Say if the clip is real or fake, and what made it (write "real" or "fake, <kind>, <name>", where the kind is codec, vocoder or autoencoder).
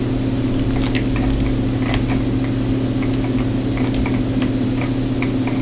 real